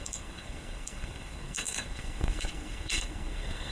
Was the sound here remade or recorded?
remade